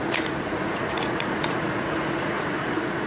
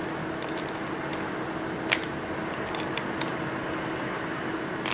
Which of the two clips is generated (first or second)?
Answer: first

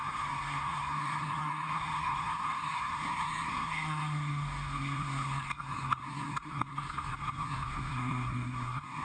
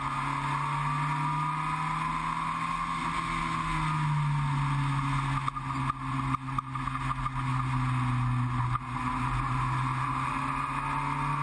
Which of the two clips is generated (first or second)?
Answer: first